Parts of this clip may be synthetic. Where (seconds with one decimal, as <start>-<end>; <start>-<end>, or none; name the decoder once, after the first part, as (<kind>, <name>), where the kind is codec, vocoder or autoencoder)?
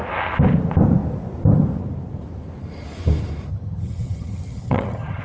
3.5-5.2 (vocoder, HiFi-GAN)